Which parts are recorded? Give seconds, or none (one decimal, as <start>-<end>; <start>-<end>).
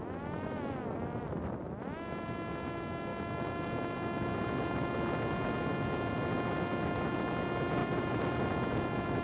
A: 0.0-7.8; 8.5-9.2